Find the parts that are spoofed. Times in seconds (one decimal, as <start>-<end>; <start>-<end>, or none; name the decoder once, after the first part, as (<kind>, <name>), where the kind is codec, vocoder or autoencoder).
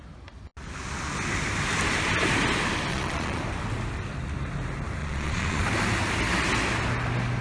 2.9-3.4 (vocoder, Vocos); 5.0-5.6